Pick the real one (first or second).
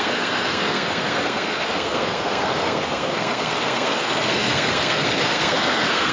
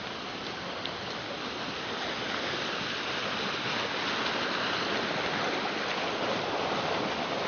second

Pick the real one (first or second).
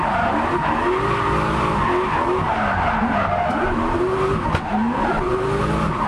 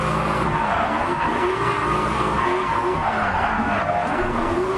first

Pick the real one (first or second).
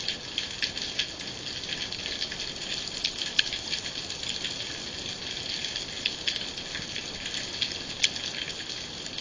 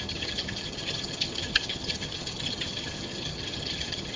first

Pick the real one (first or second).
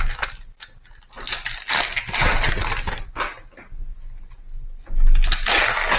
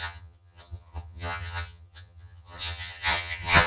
first